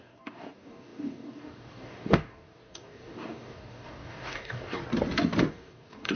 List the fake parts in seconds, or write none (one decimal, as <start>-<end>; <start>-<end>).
0.0-4.8; 5.5-6.2